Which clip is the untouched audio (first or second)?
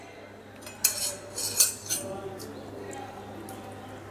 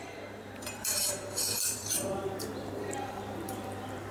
first